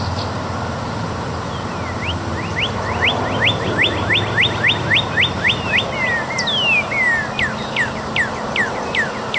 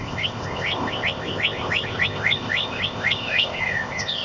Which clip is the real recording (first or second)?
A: first